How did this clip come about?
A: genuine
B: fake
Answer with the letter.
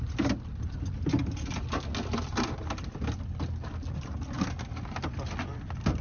A